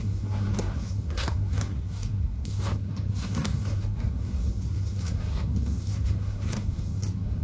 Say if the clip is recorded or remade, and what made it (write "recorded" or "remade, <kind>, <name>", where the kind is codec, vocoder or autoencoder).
remade, codec, SNAC